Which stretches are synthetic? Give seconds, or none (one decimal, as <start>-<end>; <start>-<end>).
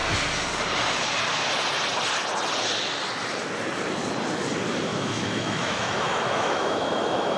4.9-7.4